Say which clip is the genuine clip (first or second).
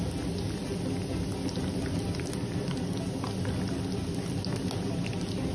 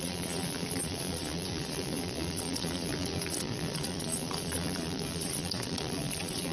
first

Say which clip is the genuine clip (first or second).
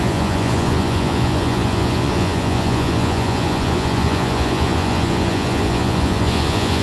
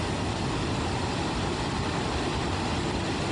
second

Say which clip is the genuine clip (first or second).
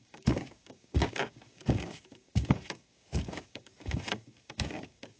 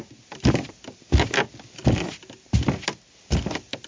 second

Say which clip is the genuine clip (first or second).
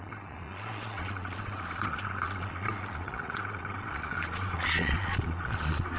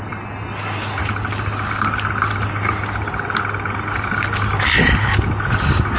second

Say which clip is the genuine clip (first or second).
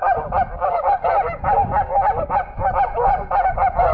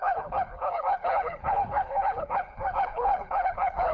first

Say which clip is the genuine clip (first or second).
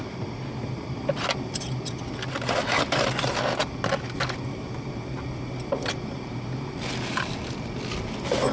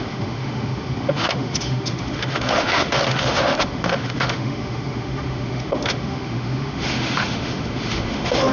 first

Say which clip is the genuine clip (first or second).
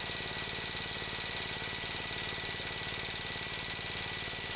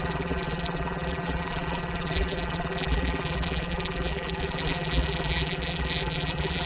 first